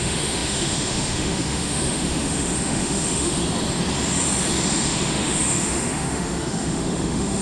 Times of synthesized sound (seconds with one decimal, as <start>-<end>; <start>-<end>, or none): 0.0-3.4; 4.7-7.4